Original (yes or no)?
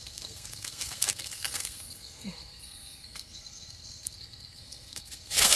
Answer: no